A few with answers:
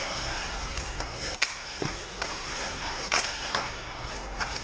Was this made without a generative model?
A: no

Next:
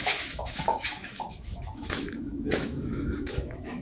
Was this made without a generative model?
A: no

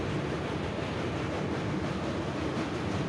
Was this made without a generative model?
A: yes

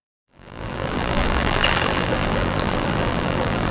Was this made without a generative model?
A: no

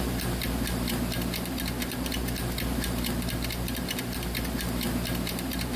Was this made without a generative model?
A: no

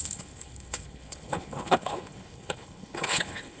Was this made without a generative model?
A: no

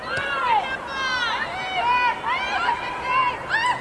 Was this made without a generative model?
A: yes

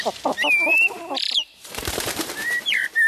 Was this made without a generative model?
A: no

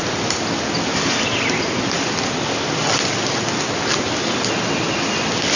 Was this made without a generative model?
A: yes